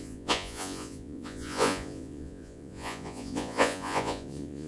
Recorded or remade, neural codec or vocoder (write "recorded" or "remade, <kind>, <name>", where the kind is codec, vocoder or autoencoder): remade, vocoder, Vocos